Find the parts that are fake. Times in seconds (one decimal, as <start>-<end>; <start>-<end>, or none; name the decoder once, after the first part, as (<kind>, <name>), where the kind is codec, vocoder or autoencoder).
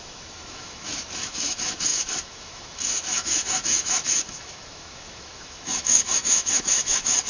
0.0-7.3 (autoencoder, DAC-VAE)